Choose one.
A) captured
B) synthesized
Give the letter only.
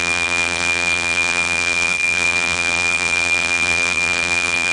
B